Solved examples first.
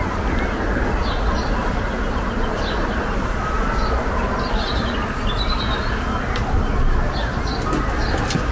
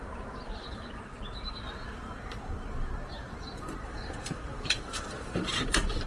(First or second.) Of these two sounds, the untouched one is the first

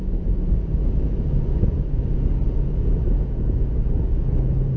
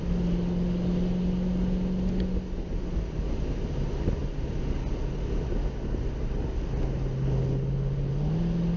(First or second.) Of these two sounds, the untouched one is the second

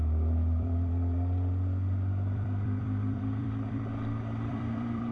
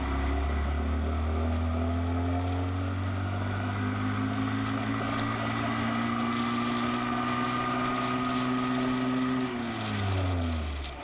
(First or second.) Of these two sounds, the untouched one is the second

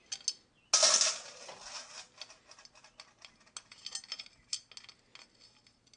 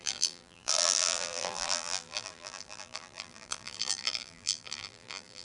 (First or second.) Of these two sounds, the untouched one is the first